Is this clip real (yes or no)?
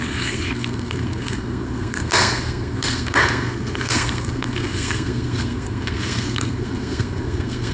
no